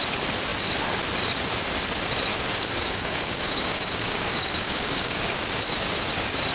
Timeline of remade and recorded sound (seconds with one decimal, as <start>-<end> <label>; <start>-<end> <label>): 0.0-2.3 recorded; 2.3-5.2 remade; 5.2-6.5 recorded